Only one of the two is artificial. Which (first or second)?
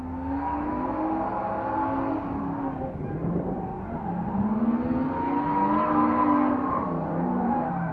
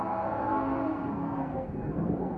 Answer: second